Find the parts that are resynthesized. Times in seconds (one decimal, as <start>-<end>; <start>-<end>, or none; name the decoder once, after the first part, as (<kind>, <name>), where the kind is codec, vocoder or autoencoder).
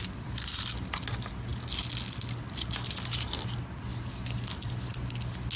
none